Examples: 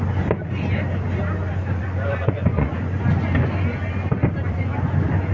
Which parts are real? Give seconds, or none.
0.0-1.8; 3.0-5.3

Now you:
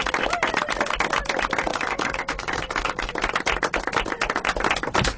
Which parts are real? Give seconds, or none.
0.0-1.7; 3.1-5.2

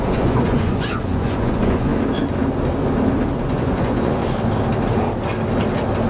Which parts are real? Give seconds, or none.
1.9-3.4; 4.2-6.1

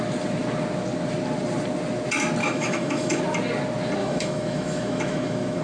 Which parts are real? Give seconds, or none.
0.0-2.4; 3.2-4.0

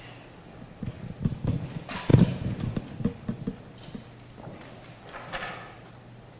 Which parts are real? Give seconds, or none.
0.0-6.4

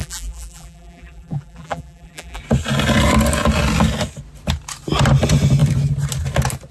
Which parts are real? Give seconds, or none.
2.4-6.7

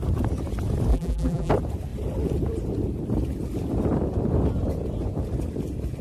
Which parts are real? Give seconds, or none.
0.0-0.9; 1.5-6.0